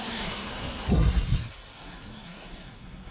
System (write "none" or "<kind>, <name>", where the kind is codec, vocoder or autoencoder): codec, SNAC